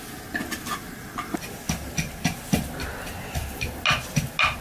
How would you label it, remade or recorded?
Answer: recorded